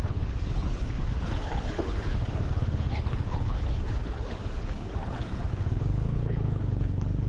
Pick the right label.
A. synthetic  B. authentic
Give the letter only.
A